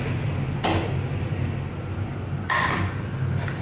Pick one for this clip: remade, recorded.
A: recorded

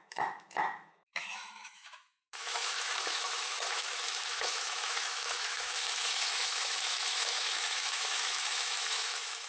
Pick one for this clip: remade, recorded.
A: remade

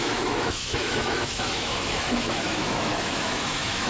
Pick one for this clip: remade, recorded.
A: remade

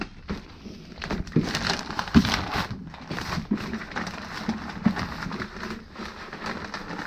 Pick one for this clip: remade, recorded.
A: recorded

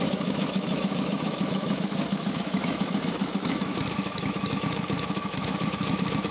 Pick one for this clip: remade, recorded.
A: remade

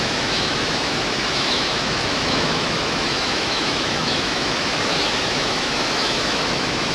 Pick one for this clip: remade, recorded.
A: remade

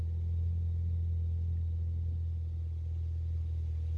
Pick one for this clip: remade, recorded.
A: recorded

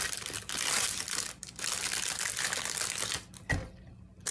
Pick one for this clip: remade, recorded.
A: recorded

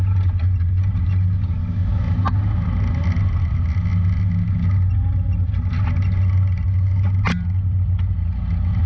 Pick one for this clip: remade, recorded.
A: recorded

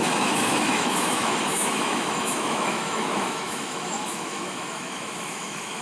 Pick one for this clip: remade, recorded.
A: remade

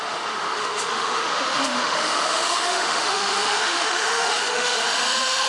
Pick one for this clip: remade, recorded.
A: remade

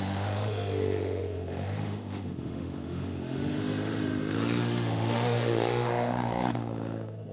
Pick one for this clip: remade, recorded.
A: remade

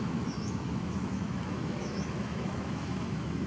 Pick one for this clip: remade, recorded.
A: remade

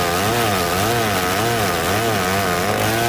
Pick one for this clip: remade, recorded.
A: recorded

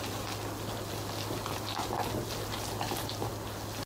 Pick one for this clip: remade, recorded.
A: recorded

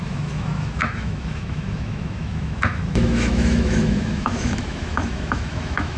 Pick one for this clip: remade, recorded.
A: remade